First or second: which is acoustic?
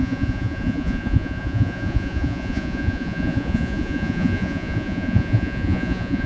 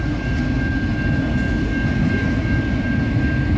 second